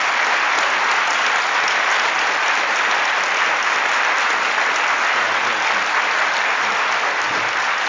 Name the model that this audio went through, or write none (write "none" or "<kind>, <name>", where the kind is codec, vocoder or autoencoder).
none